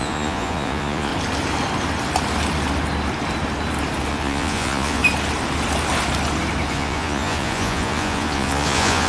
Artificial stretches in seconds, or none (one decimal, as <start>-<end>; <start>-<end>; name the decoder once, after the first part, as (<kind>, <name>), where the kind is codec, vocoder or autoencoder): 0.0-1.1 (vocoder, Vocos); 4.1-5.0; 6.7-9.1